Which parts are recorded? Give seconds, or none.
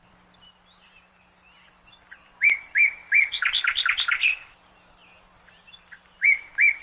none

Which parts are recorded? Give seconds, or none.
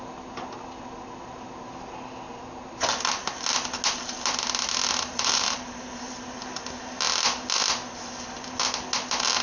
0.0-5.1; 6.1-9.4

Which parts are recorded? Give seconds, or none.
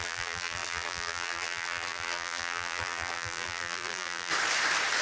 4.3-5.0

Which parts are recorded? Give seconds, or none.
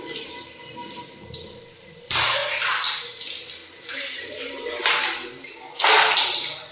0.0-3.6; 4.4-6.7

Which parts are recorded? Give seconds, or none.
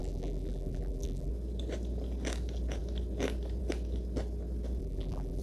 1.3-4.8